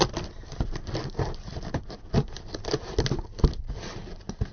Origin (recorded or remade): recorded